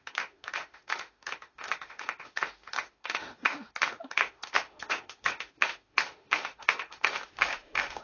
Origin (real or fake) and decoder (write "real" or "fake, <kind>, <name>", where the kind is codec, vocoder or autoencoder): fake, autoencoder, DAC-VAE